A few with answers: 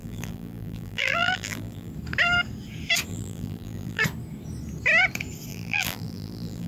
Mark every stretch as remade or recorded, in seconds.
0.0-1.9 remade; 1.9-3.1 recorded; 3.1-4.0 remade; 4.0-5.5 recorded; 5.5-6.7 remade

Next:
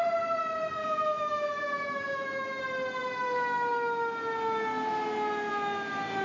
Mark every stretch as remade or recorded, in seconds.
0.0-0.8 recorded; 0.8-2.6 remade; 2.6-6.2 recorded

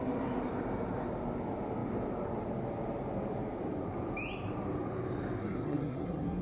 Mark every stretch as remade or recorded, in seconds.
0.0-5.4 recorded; 5.4-6.4 remade

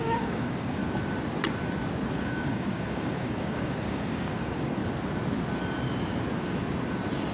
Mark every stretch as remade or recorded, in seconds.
0.0-0.8 remade; 0.8-2.1 recorded; 2.1-4.8 remade; 4.8-7.3 recorded

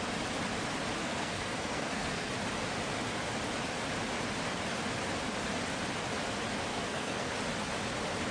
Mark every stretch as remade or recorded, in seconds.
0.0-1.0 recorded; 1.0-2.3 remade; 2.3-6.7 recorded; 6.7-7.3 remade; 7.3-8.3 recorded